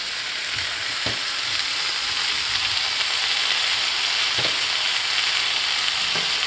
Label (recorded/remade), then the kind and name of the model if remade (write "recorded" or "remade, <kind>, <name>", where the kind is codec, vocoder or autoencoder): recorded